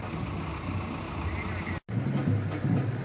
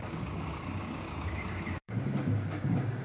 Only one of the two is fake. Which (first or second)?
second